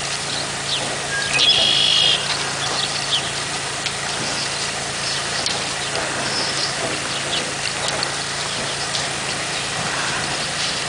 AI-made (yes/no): no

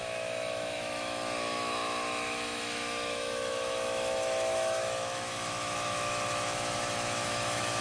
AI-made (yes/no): yes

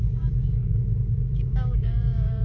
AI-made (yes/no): yes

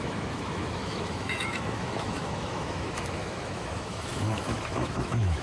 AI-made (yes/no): yes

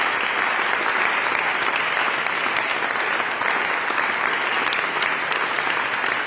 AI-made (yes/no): no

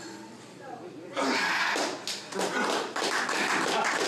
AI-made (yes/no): no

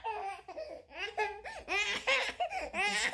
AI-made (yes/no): no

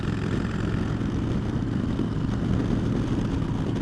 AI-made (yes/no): no